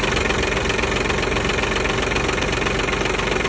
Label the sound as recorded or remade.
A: recorded